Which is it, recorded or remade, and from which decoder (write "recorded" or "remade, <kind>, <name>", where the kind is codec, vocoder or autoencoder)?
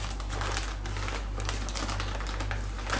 recorded